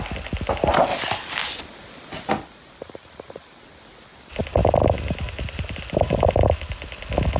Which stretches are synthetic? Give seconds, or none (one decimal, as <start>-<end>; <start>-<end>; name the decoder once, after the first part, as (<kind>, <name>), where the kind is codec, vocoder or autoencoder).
none